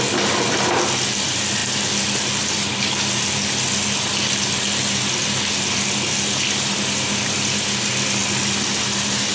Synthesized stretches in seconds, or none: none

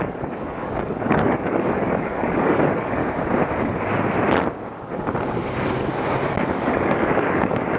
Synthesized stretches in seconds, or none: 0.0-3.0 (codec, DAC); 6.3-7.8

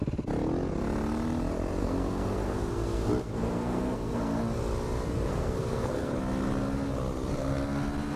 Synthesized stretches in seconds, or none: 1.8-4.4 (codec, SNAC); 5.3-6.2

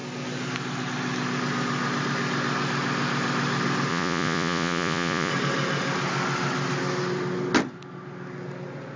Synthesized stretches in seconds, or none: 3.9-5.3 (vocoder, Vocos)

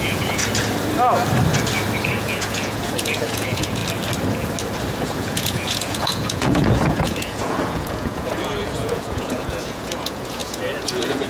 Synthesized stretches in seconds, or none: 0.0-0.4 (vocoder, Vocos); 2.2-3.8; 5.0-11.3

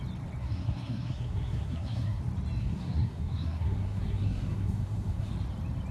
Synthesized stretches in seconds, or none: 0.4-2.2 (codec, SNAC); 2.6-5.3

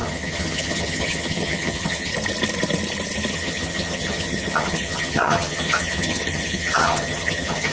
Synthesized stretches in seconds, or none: 0.0-2.1 (vocoder, HiFi-GAN); 3.3-7.7